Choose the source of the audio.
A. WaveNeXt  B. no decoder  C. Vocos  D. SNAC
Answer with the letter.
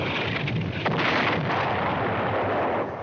B